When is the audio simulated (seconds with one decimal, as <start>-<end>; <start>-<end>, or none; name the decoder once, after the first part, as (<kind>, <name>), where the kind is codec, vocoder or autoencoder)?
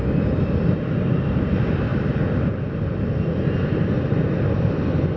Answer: none